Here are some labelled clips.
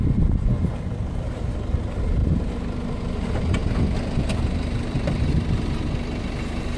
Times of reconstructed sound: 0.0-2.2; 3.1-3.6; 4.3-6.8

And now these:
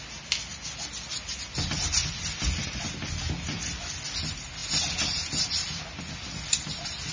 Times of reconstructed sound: none

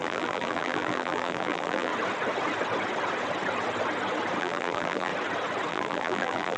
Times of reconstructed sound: 0.0-1.9; 4.4-5.1; 5.7-6.6

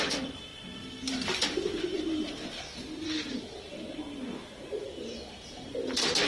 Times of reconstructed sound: 0.0-6.3

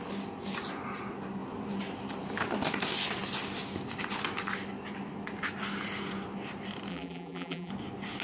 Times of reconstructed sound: 6.9-7.7